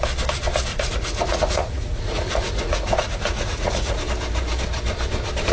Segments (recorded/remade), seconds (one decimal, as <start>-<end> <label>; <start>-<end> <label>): 0.0-0.7 recorded; 0.7-4.0 remade; 4.0-5.5 recorded